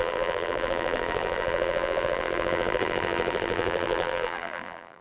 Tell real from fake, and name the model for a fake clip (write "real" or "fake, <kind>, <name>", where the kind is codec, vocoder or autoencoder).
fake, vocoder, BigVGAN v2